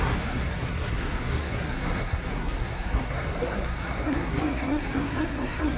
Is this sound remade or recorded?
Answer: remade